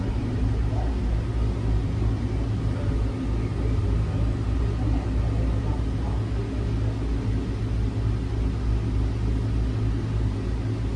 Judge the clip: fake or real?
real